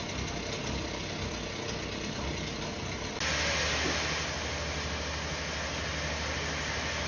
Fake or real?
real